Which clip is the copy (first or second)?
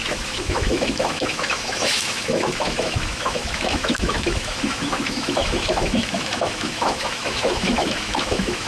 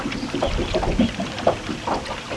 first